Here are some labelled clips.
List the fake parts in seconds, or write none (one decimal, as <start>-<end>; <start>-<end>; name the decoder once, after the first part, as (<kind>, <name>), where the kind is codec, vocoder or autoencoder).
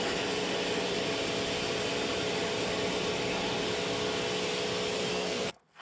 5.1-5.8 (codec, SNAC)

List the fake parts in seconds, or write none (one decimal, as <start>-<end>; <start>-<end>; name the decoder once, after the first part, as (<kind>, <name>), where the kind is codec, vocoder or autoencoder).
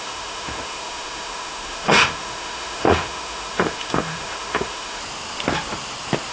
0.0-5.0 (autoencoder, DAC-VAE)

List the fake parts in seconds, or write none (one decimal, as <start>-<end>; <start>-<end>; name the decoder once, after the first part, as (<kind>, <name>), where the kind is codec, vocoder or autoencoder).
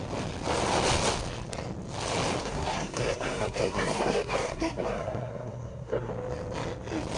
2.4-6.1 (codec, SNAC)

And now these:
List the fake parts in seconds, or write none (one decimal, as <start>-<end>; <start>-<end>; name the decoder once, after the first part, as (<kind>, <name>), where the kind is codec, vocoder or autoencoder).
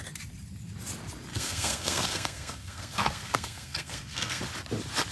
1.3-4.4 (codec, SNAC)